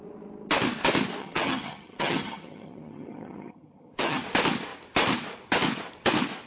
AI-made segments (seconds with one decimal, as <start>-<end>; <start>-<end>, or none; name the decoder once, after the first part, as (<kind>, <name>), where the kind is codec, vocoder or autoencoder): 1.2-4.2 (vocoder, HiFi-GAN)